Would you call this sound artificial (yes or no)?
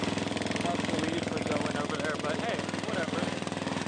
no